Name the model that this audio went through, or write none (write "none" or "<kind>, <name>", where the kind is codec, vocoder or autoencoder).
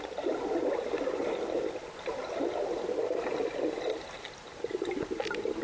none